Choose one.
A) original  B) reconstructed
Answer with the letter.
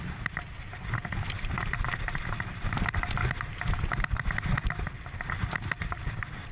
A